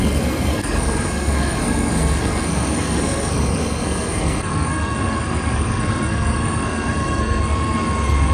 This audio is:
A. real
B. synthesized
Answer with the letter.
B